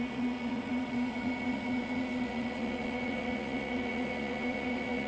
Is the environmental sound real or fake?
fake